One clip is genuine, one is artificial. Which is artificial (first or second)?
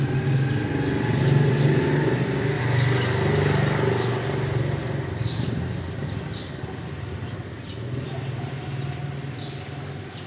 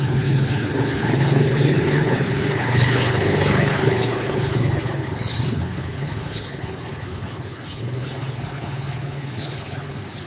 second